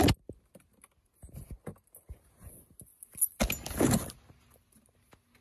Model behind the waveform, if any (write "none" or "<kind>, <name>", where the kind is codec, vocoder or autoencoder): none